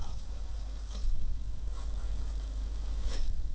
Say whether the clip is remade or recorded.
remade